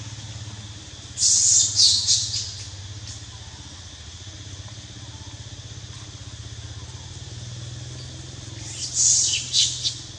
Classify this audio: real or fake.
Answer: real